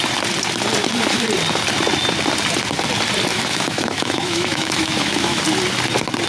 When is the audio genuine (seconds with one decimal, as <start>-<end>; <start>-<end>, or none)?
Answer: 0.0-3.3; 5.4-6.3